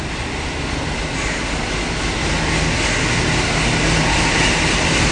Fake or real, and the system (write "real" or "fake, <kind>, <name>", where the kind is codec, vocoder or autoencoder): real